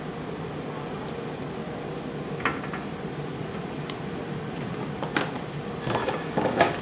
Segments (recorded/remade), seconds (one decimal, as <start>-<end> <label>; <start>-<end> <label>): 0.0-6.0 recorded; 6.0-6.8 remade